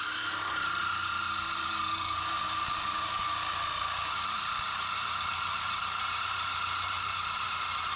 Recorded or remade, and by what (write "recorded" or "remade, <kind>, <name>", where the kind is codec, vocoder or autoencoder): remade, vocoder, BigVGAN v2